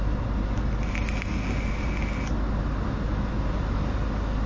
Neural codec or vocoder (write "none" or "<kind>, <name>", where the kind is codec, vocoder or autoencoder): none